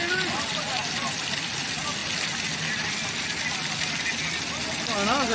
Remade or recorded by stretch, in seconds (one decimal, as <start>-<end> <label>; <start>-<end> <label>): 0.0-5.3 recorded